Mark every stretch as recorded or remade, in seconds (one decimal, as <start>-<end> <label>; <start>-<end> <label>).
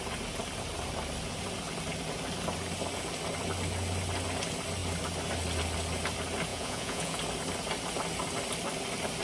0.0-6.5 recorded; 6.5-7.2 remade; 7.2-9.2 recorded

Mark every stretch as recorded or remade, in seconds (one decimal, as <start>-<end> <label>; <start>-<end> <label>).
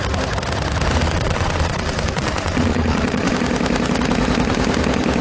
0.0-1.0 recorded; 1.0-3.3 remade; 3.3-5.2 recorded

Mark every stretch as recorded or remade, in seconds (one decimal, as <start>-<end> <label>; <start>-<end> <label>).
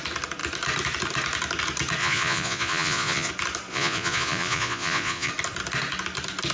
0.0-2.0 recorded; 2.0-3.3 remade; 3.3-3.7 recorded; 3.7-5.3 remade; 5.3-6.5 recorded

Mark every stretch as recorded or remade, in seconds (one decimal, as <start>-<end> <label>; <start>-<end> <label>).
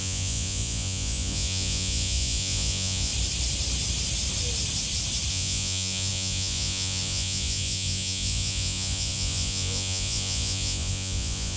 0.0-3.1 remade; 3.1-5.3 recorded; 5.3-11.6 remade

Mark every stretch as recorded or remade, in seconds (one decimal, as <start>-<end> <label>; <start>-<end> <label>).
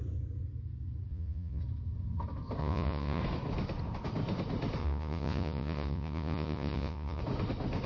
0.0-1.1 recorded; 1.1-1.6 remade; 1.6-2.6 recorded; 2.6-3.2 remade; 3.2-4.8 recorded; 4.8-7.2 remade; 7.2-7.9 recorded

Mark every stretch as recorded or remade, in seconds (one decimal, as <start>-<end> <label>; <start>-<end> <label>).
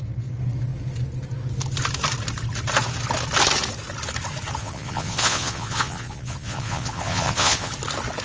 0.0-4.6 recorded; 4.6-7.7 remade; 7.7-8.2 recorded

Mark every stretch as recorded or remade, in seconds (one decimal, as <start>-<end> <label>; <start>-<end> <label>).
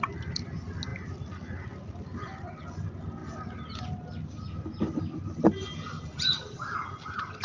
0.0-7.4 recorded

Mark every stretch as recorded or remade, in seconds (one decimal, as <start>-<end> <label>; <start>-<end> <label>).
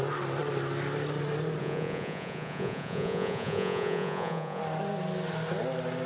0.0-1.6 recorded; 1.6-4.6 remade; 4.6-6.1 recorded